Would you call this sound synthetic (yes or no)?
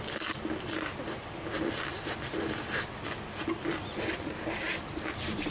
no